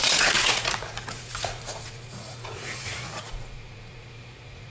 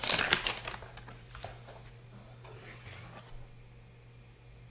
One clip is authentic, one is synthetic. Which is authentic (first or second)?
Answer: second